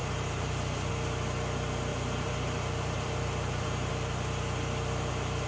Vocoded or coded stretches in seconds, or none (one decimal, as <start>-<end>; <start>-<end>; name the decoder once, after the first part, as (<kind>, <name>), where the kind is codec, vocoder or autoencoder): 0.0-0.9 (vocoder, BigVGAN v2); 1.9-3.9